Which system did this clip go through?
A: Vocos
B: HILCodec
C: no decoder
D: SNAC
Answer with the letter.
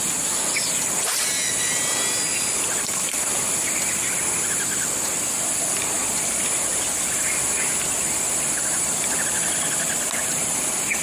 C